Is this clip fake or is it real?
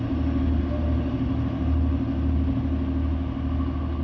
real